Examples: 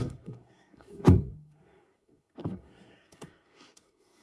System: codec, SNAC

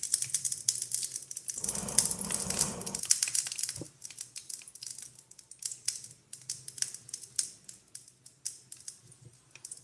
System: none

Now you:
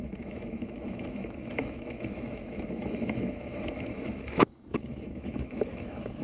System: autoencoder, DAC-VAE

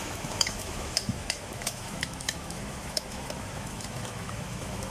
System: autoencoder, DAC-VAE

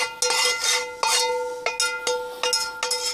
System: none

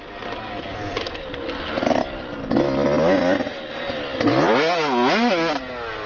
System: none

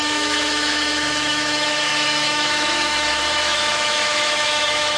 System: autoencoder, DAC-VAE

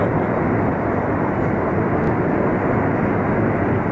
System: none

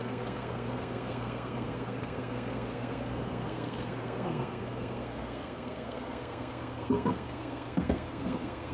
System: codec, SNAC